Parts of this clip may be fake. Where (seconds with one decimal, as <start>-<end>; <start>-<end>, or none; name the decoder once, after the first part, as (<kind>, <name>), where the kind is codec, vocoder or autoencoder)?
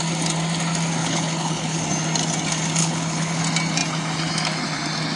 1.0-1.8 (codec, HILCodec); 2.8-3.4